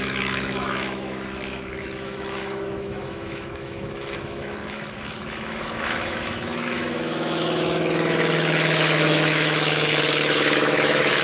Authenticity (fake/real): fake